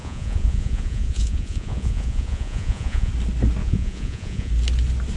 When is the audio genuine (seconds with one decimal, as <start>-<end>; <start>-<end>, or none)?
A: 3.1-3.6; 4.5-5.2

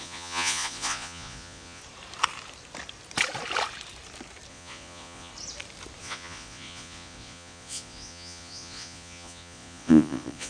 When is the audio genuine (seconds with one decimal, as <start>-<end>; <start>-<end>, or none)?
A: 1.8-4.5; 5.3-6.0